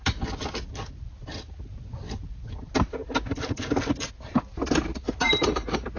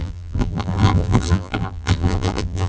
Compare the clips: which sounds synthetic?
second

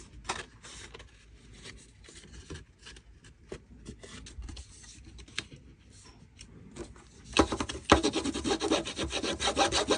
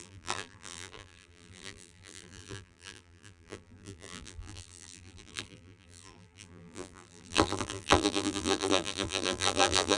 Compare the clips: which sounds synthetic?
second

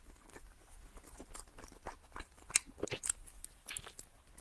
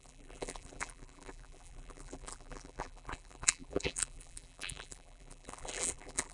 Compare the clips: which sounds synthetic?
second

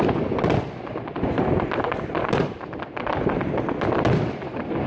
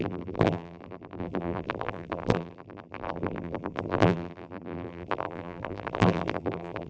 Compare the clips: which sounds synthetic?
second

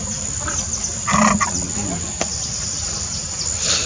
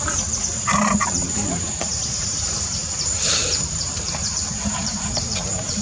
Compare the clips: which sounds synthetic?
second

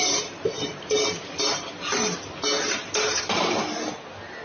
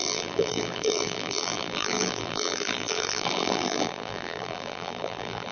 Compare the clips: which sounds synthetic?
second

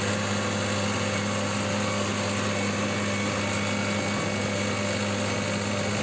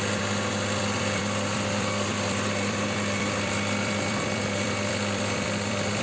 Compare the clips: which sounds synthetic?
second